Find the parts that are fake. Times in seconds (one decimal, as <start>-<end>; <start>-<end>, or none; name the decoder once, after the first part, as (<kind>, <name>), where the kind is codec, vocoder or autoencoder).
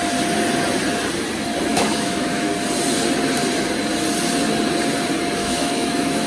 1.7-2.5 (autoencoder, DAC-VAE); 5.4-6.3